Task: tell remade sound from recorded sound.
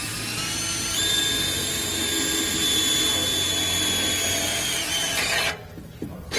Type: recorded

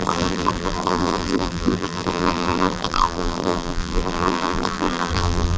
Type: remade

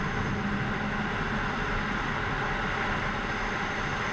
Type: recorded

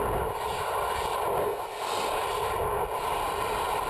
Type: recorded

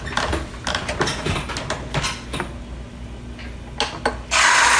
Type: recorded